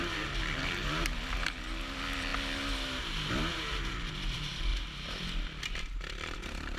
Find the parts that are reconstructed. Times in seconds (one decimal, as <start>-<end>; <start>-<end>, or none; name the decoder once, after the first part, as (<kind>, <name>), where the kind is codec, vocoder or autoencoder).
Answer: 4.7-5.4 (vocoder, BigVGAN v2)

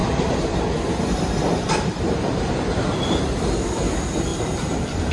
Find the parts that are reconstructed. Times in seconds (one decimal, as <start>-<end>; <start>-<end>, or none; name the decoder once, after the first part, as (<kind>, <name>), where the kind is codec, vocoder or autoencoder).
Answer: 0.0-0.6 (vocoder, BigVGAN v2); 1.5-2.8; 4.3-5.1

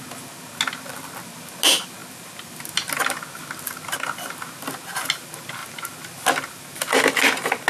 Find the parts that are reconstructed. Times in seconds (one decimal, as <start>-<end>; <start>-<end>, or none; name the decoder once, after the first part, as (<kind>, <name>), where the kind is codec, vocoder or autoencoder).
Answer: none